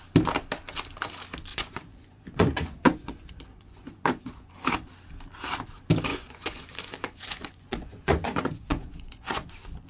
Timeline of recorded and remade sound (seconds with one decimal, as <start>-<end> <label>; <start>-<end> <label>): 0.0-1.5 recorded; 1.5-4.5 remade; 4.5-6.1 recorded; 6.1-9.5 remade; 9.5-9.9 recorded